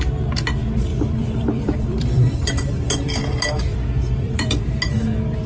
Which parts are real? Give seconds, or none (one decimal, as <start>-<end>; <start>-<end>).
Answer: 0.0-0.9; 3.2-3.7; 4.6-5.5